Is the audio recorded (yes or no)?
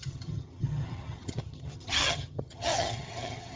no